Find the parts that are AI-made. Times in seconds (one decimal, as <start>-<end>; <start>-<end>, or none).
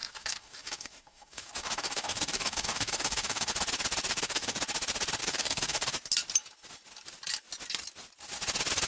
0.0-3.5; 4.1-4.6; 5.2-5.9